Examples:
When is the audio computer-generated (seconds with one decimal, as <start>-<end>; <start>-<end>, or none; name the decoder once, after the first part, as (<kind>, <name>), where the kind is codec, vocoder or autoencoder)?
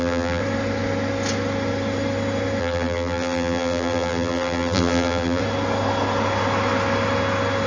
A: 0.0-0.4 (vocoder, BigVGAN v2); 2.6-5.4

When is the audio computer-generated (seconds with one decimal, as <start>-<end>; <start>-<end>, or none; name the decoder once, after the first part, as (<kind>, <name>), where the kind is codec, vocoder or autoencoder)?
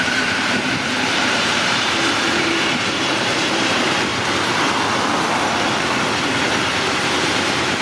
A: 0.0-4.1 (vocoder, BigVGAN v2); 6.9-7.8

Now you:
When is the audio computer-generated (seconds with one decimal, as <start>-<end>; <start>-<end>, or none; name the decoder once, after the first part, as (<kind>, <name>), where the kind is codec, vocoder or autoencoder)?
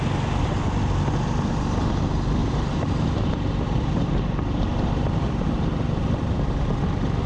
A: 2.4-6.8 (vocoder, BigVGAN v2)